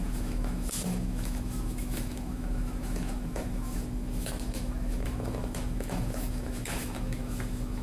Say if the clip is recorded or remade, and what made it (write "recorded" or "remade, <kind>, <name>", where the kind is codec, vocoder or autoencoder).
remade, autoencoder, DAC-VAE